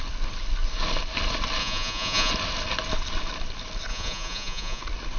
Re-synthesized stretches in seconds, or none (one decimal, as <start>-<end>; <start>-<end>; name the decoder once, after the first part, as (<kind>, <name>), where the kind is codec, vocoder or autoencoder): 1.6-2.3 (vocoder, Vocos); 3.9-4.8